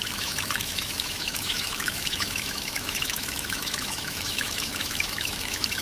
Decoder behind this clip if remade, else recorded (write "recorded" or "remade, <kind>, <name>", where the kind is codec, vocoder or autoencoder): remade, autoencoder, DAC-VAE